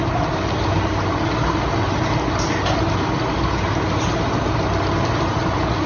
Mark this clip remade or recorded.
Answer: recorded